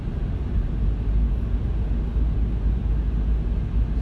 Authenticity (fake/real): real